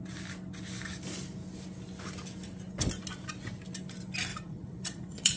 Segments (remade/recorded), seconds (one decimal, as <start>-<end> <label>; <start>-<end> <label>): 0.0-4.3 recorded; 4.3-5.4 remade